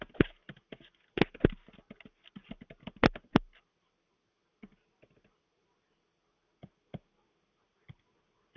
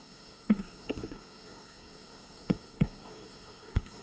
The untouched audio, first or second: first